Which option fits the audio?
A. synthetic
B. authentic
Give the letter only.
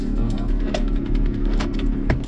A